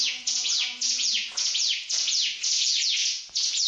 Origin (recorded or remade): remade